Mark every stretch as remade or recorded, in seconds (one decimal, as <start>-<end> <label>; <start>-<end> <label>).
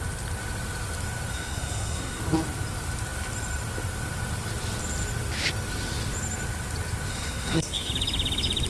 0.0-1.3 recorded; 1.3-2.2 remade; 2.2-7.1 recorded; 7.1-7.9 remade; 7.9-8.7 recorded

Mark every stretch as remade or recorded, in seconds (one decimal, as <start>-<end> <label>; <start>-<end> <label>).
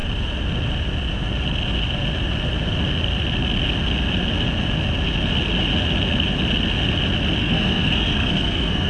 0.0-7.4 recorded; 7.4-8.9 remade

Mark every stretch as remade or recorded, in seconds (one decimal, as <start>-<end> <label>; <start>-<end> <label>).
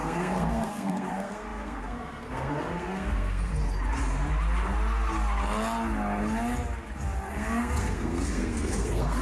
0.0-3.5 remade; 3.5-7.3 recorded; 7.3-9.2 remade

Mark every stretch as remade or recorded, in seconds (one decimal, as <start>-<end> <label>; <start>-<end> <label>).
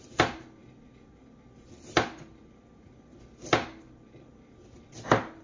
0.0-5.4 recorded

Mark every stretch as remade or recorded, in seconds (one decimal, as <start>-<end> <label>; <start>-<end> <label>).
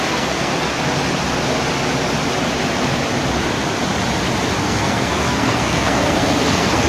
0.0-0.5 remade; 0.5-4.6 recorded; 4.6-6.9 remade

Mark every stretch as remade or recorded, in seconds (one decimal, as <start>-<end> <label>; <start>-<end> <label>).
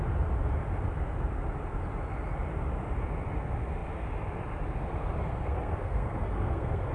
0.0-5.2 recorded; 5.2-6.9 remade